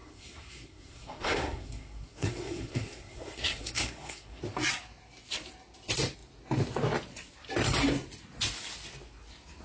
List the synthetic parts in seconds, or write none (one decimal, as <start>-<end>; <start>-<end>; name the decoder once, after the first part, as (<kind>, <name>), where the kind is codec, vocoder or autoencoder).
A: 0.0-4.4 (codec, SNAC)